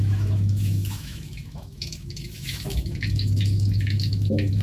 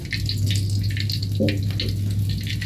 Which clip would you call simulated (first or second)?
first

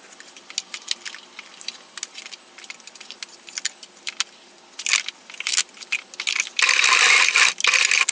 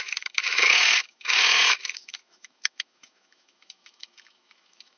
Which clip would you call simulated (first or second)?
second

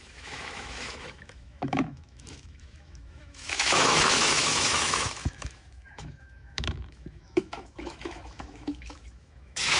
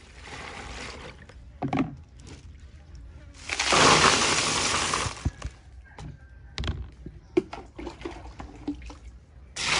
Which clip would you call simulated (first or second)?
first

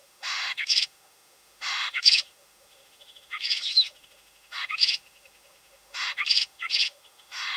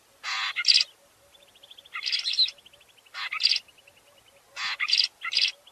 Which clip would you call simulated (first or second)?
first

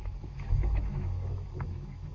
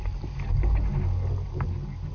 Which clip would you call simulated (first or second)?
first